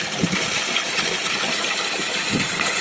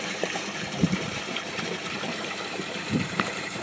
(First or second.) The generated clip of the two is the second